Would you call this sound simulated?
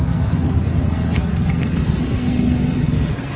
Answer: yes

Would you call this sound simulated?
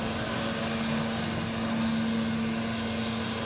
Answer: no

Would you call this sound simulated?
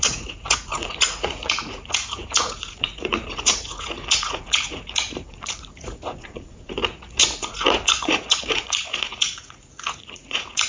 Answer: yes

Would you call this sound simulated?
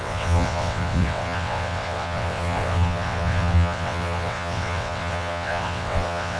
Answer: yes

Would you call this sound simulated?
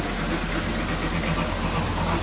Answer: no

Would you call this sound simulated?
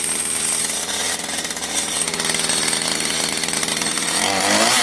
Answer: no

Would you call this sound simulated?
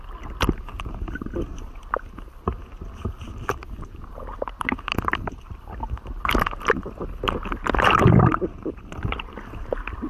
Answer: no